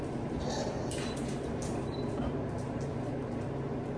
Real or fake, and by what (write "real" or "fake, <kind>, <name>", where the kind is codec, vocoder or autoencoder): fake, vocoder, BigVGAN v2